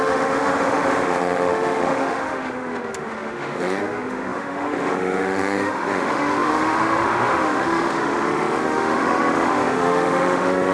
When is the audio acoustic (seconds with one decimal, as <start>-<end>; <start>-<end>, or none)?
none